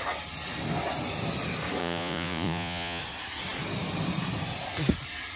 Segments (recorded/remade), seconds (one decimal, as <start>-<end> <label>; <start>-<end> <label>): 0.0-1.8 recorded; 1.8-3.0 remade; 3.0-5.4 recorded